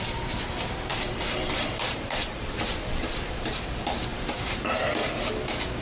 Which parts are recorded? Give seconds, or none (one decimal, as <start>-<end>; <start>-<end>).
0.0-0.9; 3.6-4.1; 5.3-5.8